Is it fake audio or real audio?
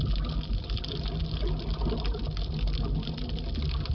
real